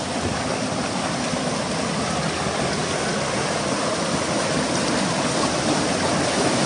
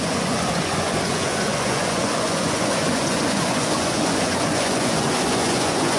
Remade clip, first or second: second